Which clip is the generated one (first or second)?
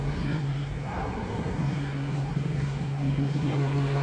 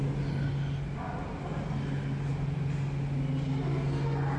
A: first